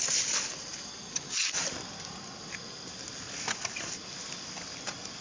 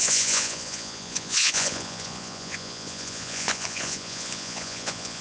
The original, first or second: first